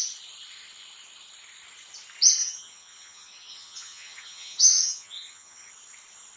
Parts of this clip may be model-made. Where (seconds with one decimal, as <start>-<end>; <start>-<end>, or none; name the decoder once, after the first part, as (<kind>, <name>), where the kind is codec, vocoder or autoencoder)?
2.4-5.7 (vocoder, HiFi-GAN)